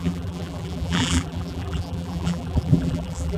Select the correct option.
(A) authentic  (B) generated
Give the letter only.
B